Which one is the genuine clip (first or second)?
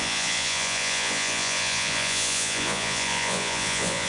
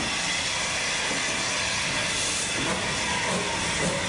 second